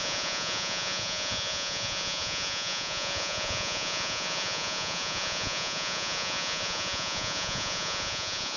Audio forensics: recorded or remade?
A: remade